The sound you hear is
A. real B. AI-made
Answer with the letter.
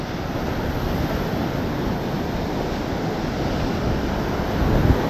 A